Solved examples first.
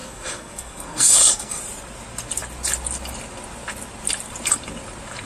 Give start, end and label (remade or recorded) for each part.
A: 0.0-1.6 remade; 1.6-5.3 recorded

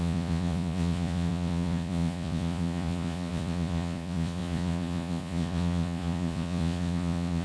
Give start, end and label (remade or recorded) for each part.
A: 0.0-7.4 remade